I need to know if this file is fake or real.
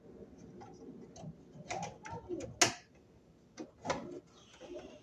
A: real